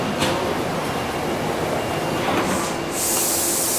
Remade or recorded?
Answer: recorded